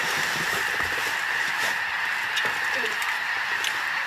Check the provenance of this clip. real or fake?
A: real